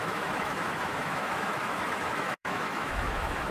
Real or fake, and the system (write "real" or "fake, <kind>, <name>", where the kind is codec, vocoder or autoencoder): fake, autoencoder, DAC-VAE